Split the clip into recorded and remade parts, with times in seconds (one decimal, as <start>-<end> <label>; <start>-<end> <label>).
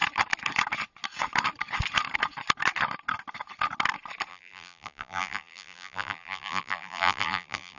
0.0-4.3 recorded; 4.3-7.8 remade